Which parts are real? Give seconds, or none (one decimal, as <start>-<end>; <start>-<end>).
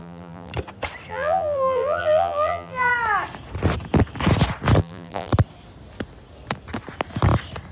0.5-1.1; 2.9-4.8; 5.3-7.7